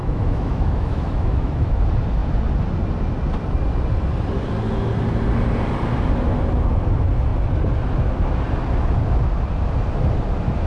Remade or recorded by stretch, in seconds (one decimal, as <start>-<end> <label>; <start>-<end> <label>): 0.0-1.8 remade; 1.8-10.7 recorded